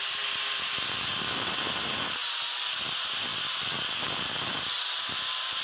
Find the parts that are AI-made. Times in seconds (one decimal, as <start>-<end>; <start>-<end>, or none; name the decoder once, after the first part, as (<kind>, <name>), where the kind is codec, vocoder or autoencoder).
3.3-4.8 (vocoder, BigVGAN v2)